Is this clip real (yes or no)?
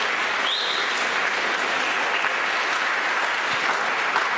yes